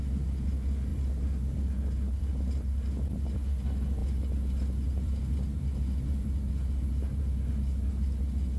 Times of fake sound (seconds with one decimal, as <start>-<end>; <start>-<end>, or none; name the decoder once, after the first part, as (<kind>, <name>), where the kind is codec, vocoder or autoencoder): none